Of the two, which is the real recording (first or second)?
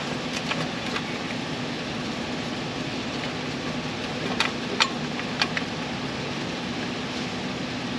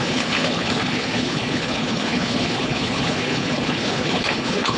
first